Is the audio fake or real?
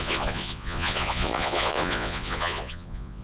fake